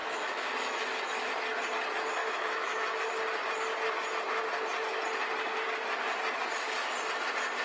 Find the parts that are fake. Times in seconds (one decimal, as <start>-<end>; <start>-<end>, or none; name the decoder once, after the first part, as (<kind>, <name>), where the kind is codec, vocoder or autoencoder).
0.0-1.3 (autoencoder, DAC-VAE); 2.2-3.1